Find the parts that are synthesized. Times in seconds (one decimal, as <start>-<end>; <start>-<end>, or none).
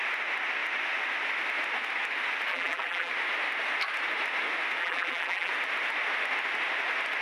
2.5-3.1; 4.8-5.5